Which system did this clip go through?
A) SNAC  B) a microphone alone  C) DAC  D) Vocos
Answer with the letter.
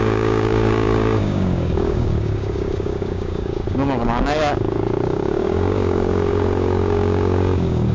C